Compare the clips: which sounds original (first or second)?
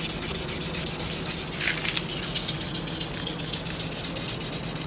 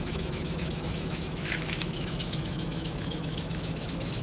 first